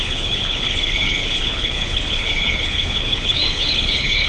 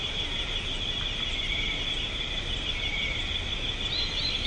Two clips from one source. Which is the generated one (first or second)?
first